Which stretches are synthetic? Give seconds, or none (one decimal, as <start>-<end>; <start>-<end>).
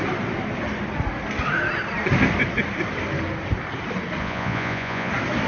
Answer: 4.2-5.1